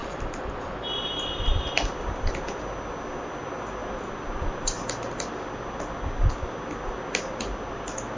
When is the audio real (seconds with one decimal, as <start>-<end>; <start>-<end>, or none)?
0.5-8.2